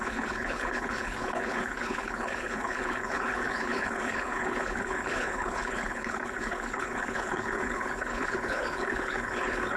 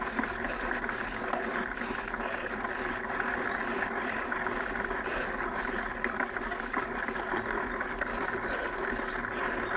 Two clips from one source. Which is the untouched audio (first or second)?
second